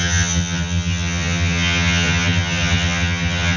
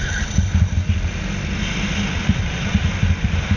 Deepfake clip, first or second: first